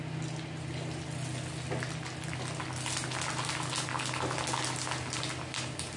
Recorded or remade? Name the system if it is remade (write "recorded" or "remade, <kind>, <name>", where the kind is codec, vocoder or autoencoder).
recorded